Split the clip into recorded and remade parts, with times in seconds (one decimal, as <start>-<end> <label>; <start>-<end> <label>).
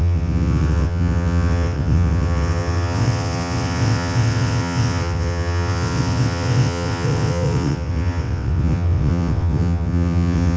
0.0-10.6 remade